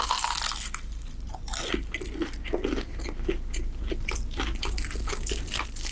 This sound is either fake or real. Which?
real